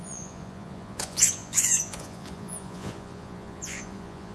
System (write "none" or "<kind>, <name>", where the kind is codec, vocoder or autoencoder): vocoder, Vocos